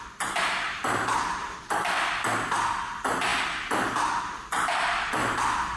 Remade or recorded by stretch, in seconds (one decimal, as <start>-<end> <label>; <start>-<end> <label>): 0.0-5.8 recorded